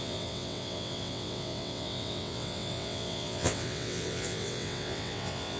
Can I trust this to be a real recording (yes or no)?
no